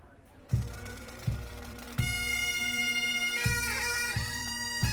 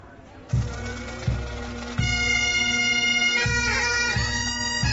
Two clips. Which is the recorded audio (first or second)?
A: second